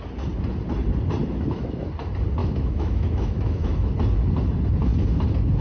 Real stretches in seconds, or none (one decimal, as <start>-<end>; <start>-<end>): 0.0-1.2; 1.8-2.4; 3.9-5.6